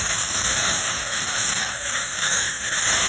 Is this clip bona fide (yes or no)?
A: no